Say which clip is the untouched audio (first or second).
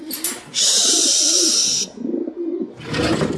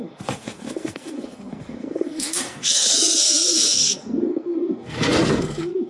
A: first